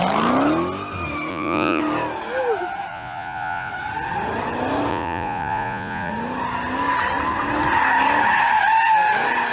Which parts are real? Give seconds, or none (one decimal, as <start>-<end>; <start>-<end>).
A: 0.0-1.3; 1.8-2.9; 3.7-4.9; 6.1-9.5